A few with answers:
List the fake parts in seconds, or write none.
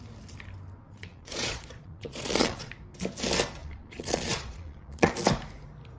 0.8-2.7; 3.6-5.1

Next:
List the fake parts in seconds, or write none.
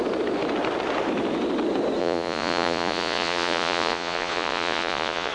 2.0-5.3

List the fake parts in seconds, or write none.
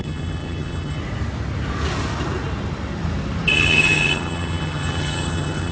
0.0-1.0; 3.5-5.7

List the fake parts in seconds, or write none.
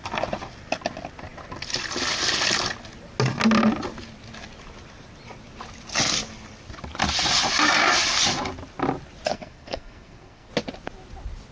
9.3-10.5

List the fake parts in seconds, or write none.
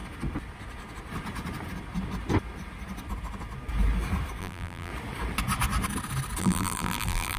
4.4-4.9; 6.4-7.4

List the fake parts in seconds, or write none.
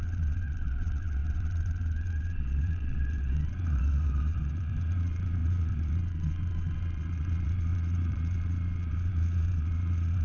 0.0-10.2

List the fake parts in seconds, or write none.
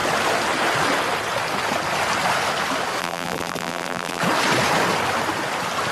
3.0-4.2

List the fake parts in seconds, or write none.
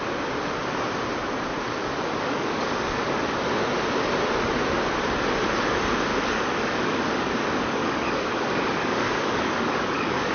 1.8-3.2; 6.1-10.3